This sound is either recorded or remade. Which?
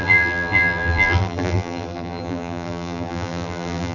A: remade